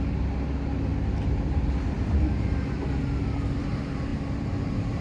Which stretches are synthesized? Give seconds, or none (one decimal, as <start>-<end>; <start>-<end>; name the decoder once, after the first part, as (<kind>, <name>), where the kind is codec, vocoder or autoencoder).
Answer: 0.0-5.0 (vocoder, BigVGAN v2)